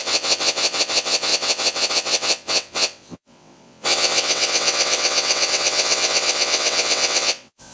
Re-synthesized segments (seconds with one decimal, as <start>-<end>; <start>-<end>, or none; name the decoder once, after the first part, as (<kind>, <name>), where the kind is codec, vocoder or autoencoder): 0.0-7.7 (vocoder, WaveNeXt)